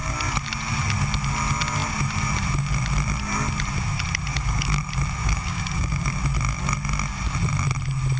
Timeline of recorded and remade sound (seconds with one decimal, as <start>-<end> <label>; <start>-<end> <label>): 0.0-4.3 recorded; 4.3-4.8 remade; 4.8-5.2 recorded; 5.2-6.1 remade; 6.1-8.2 recorded